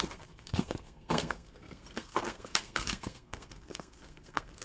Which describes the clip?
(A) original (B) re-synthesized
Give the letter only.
B